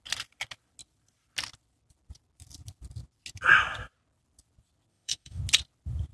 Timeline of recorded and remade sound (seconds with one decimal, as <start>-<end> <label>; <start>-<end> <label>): 0.0-4.9 recorded; 4.9-5.4 remade; 5.4-6.1 recorded

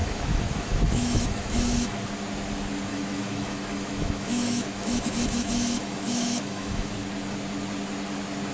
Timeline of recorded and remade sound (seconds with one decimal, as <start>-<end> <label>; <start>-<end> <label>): 0.0-2.0 remade; 2.0-2.9 recorded; 2.9-6.9 remade; 6.9-8.5 recorded

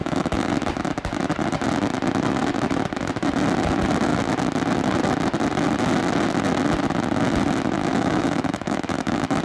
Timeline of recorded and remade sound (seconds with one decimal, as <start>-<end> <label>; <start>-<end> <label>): 0.0-0.5 remade; 0.5-7.9 recorded; 7.9-9.4 remade

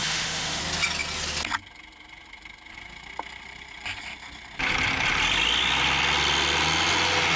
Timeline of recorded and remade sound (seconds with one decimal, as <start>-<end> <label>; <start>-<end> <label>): 0.0-0.6 remade; 0.6-7.4 recorded

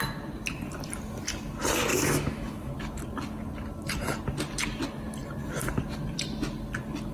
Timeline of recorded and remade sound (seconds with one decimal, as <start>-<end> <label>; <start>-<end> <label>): 0.0-1.9 recorded; 1.9-2.7 remade; 2.7-7.1 recorded

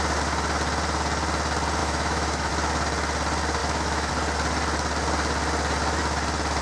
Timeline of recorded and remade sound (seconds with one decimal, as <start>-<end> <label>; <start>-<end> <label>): 0.0-1.8 recorded; 1.8-2.5 remade; 2.5-3.6 recorded; 3.6-4.1 remade; 4.1-6.6 recorded

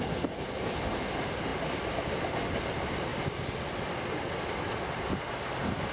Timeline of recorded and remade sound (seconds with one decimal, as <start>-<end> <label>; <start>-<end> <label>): 0.0-5.9 recorded